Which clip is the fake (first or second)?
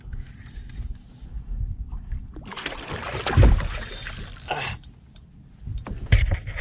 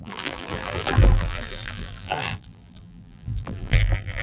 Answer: second